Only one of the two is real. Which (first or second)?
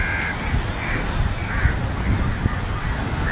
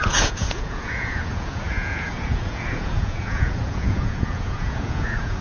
first